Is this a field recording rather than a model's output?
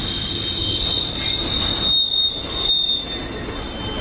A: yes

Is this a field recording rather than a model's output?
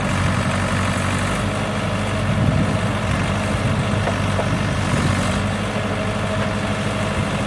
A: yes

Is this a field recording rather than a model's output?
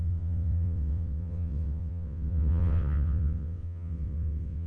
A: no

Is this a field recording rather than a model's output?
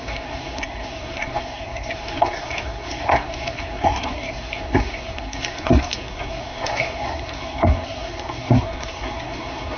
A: no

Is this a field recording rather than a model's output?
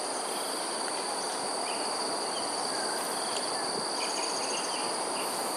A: yes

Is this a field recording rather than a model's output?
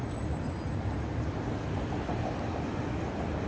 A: yes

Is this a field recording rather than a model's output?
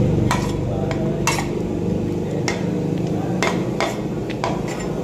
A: yes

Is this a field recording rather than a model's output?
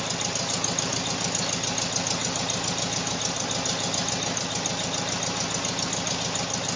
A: yes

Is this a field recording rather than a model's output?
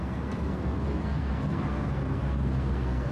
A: no